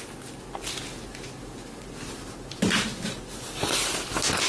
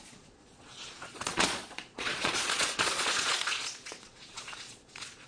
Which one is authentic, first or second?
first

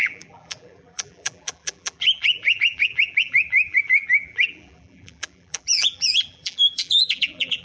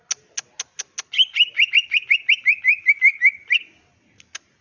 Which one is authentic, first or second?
second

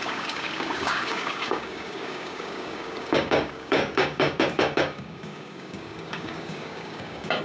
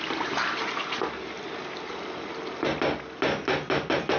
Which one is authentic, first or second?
second